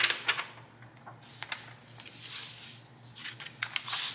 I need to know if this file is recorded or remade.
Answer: recorded